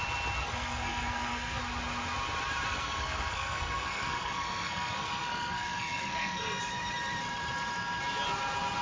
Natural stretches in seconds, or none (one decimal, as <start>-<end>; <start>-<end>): 0.0-0.4; 1.6-2.7; 6.6-8.8